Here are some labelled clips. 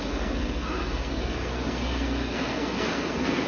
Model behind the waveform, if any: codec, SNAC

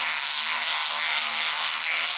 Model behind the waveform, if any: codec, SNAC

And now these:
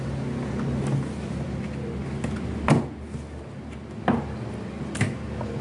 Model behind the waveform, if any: none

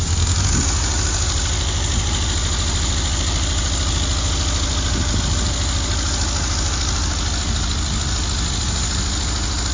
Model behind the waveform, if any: none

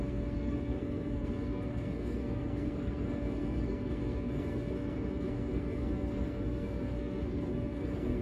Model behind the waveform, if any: codec, SNAC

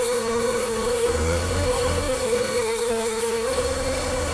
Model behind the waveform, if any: codec, SNAC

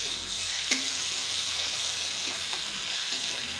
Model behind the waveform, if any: codec, SNAC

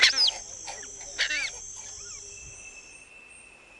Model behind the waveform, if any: none